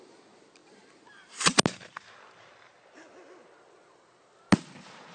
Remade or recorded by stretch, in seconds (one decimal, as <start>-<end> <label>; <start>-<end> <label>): 0.0-5.1 recorded

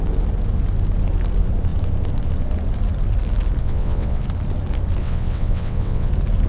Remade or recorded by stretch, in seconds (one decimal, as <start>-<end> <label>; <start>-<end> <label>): 0.0-3.6 recorded; 3.6-4.2 remade; 4.2-5.0 recorded; 5.0-6.1 remade; 6.1-6.5 recorded

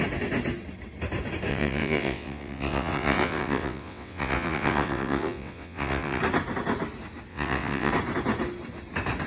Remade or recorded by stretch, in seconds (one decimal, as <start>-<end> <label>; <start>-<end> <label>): 0.0-1.5 recorded; 1.5-6.2 remade; 6.2-7.3 recorded; 7.3-7.9 remade; 7.9-9.3 recorded

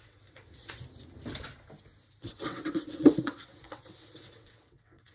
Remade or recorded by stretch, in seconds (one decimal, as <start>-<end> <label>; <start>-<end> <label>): 0.0-0.8 remade; 0.8-2.2 recorded; 2.2-5.1 remade

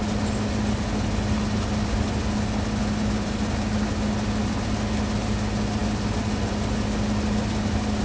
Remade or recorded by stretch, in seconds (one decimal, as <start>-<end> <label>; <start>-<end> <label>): 0.0-8.0 recorded

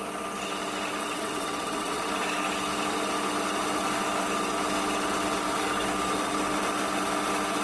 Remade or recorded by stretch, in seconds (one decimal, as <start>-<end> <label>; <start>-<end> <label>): 0.0-1.0 recorded; 1.0-2.0 remade; 2.0-7.6 recorded

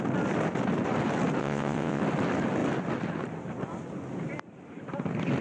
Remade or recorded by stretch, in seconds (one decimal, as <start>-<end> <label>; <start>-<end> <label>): 0.0-1.4 recorded; 1.4-2.0 remade; 2.0-5.4 recorded

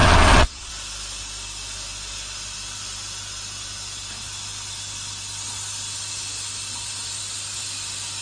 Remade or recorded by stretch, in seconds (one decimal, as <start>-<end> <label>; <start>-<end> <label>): 0.0-0.7 remade; 0.7-8.2 recorded